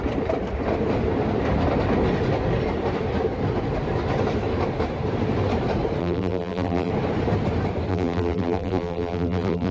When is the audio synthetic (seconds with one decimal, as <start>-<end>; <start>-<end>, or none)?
6.0-6.9; 7.9-9.7